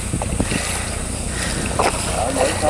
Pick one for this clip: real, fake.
real